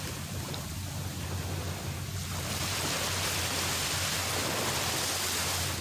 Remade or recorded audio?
recorded